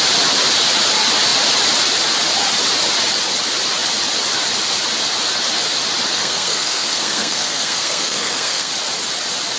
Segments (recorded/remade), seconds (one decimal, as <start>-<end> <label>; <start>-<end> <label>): 0.0-6.1 recorded; 6.1-8.7 remade; 8.7-9.6 recorded